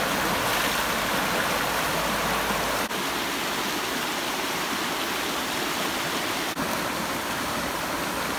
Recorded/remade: recorded